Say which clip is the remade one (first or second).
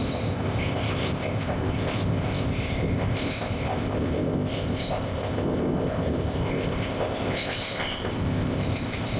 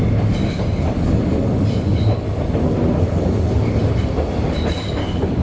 first